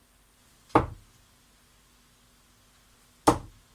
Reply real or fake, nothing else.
real